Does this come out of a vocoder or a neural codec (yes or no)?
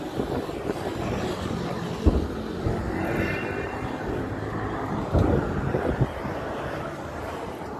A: no